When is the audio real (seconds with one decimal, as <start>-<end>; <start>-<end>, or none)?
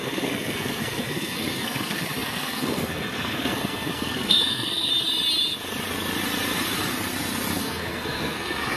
4.9-7.6